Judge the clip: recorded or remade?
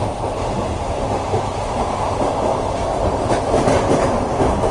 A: remade